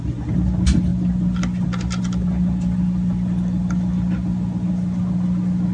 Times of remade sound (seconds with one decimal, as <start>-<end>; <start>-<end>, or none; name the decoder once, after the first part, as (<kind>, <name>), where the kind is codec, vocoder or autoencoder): none